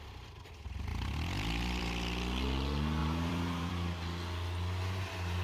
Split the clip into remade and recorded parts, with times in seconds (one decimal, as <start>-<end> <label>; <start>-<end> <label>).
0.0-0.9 recorded; 0.9-1.8 remade; 1.8-3.0 recorded; 3.0-3.7 remade; 3.7-5.4 recorded